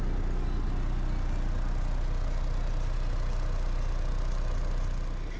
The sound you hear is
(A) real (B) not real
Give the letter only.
A